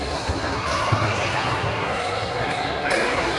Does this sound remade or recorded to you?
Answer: remade